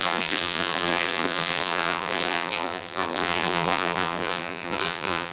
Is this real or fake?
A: fake